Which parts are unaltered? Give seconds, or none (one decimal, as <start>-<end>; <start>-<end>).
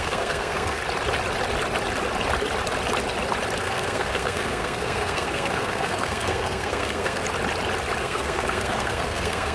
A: 0.8-3.6; 7.2-8.0